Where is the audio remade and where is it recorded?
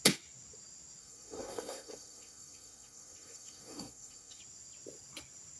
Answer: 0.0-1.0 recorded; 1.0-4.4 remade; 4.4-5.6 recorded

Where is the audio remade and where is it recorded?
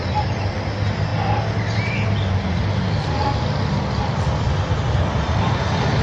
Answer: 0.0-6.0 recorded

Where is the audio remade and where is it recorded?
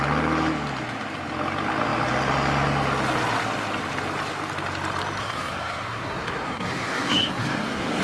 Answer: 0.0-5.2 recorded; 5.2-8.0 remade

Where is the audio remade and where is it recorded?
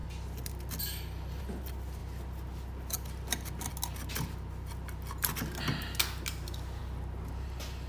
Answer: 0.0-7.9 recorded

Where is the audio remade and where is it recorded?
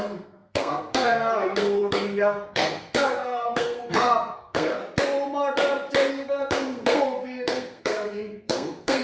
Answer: 0.0-4.8 remade; 4.8-6.1 recorded; 6.1-9.0 remade